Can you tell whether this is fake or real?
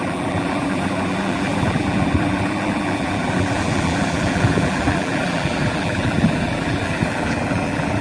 fake